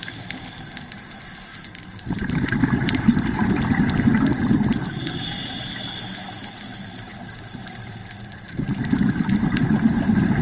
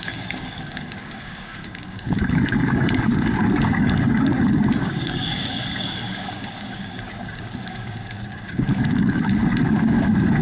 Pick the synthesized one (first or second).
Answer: second